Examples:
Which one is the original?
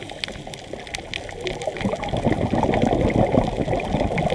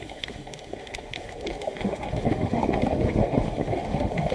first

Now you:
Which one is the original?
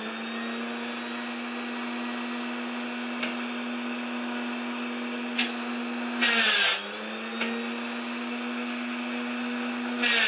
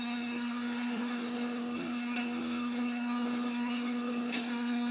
first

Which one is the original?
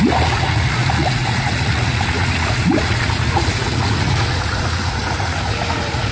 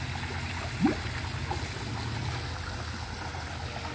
second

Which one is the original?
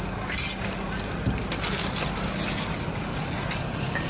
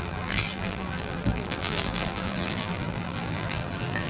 first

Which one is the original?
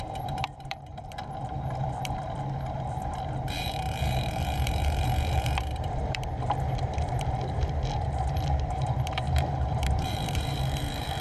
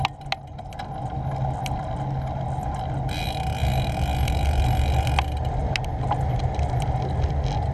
second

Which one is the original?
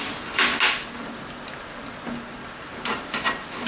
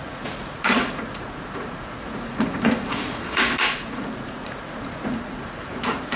first